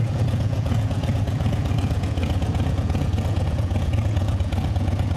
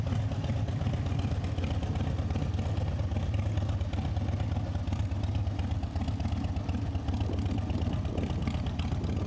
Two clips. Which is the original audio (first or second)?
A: second